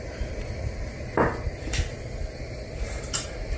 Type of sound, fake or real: fake